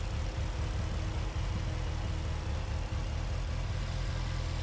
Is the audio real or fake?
real